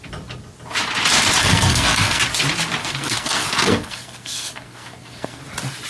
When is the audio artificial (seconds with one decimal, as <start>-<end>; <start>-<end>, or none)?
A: 1.4-2.2; 2.8-5.4